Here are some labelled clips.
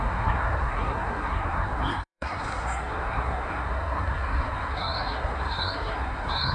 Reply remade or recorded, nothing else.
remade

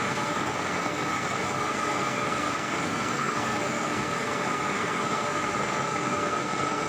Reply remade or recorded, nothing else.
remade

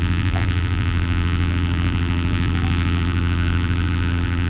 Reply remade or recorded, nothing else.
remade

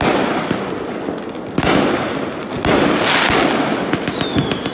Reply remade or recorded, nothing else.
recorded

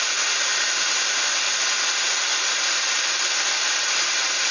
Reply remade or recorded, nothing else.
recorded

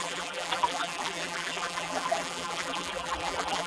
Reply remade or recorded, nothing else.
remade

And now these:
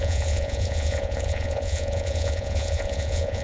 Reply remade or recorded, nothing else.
remade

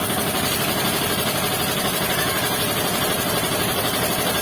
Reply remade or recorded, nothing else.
remade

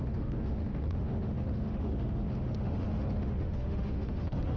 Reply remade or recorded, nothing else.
remade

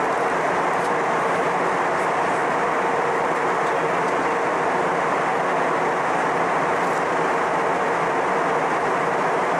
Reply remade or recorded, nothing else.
recorded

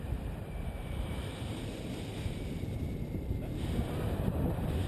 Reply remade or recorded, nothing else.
remade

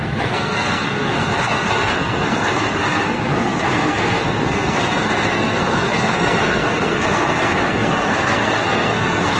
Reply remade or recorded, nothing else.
remade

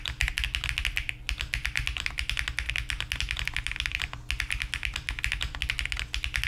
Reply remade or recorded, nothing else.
recorded